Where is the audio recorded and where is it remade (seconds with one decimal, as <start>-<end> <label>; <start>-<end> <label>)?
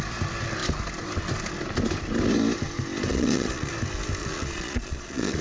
0.0-3.1 recorded; 3.1-3.7 remade; 3.7-4.2 recorded; 4.2-5.4 remade